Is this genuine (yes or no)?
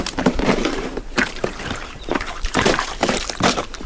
no